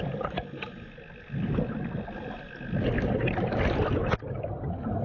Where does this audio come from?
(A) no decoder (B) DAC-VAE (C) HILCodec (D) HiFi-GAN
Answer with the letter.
A